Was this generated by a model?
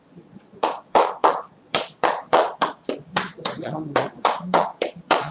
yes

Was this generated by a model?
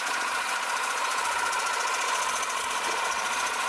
yes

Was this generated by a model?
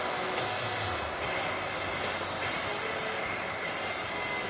no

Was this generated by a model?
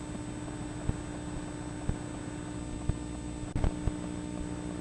no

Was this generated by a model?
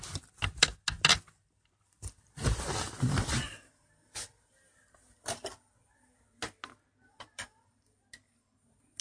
no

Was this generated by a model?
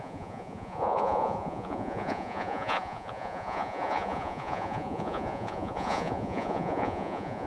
yes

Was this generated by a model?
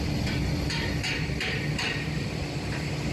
no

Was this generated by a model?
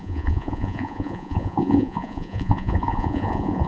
yes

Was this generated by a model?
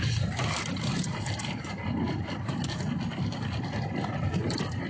no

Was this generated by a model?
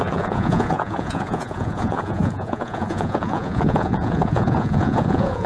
yes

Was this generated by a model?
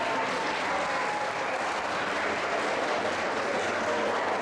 no